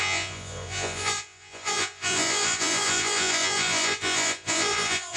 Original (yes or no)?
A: no